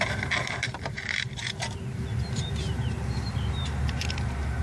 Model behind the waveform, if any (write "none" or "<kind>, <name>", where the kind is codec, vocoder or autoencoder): vocoder, BigVGAN v2